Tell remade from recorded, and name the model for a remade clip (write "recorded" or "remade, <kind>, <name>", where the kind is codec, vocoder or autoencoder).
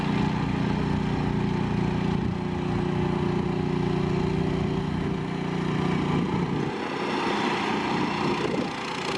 recorded